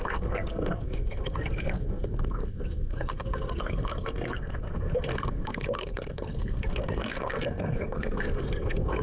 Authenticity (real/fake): fake